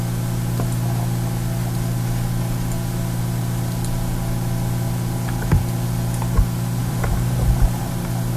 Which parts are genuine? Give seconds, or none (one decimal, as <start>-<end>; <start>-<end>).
0.0-6.8; 7.8-8.4